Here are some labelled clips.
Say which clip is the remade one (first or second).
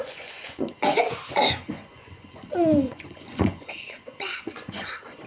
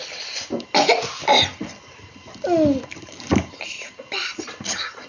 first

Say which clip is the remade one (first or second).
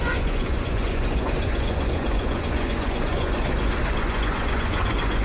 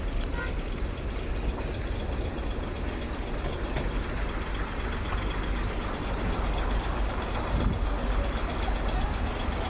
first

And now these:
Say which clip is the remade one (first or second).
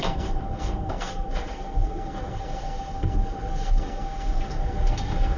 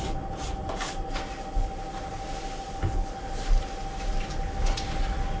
first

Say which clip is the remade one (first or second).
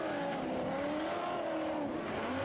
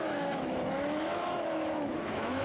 second